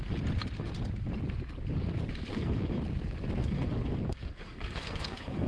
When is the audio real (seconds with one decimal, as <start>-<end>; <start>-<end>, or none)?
0.0-2.3; 2.8-3.4